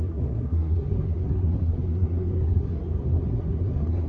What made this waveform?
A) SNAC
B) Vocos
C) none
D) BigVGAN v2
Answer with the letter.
A